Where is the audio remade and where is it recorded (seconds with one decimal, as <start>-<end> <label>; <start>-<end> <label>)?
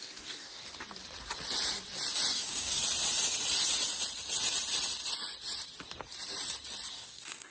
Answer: 0.0-0.6 remade; 0.6-2.3 recorded; 2.3-2.8 remade; 2.8-6.9 recorded; 6.9-7.5 remade